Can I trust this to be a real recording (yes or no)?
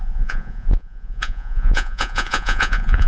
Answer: no